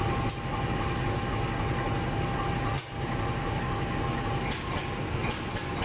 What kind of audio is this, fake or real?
real